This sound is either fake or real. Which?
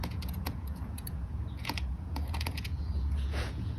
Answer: fake